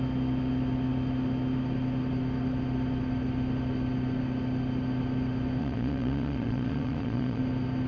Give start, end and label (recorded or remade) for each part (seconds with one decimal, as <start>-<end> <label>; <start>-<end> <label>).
0.0-5.6 recorded; 5.6-7.4 remade; 7.4-7.9 recorded